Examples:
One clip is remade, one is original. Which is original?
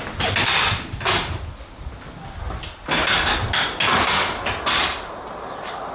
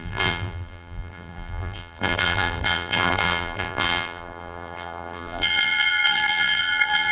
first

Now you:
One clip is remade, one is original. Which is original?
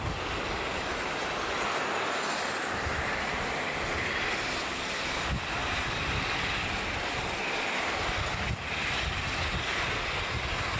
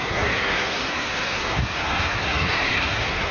first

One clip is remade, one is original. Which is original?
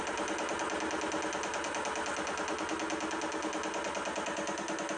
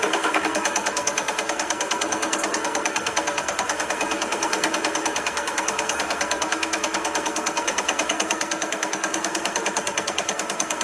first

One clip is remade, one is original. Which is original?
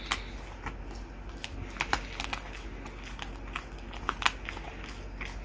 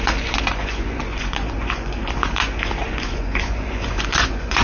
first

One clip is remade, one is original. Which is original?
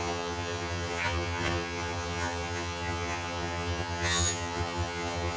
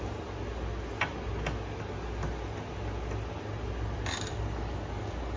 second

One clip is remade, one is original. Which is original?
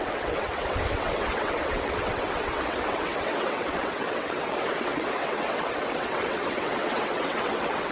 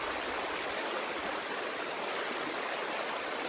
second